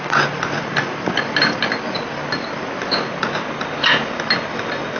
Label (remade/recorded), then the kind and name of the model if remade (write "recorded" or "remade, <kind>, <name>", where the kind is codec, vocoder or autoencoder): recorded